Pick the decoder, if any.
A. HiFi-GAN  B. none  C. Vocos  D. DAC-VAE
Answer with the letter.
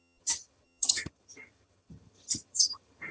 A